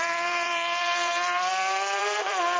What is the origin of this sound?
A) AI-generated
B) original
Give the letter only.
A